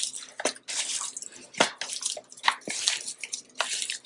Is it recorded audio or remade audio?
recorded